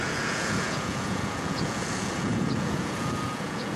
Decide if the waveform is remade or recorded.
remade